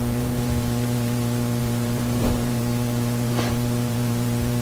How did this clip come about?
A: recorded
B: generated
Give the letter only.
B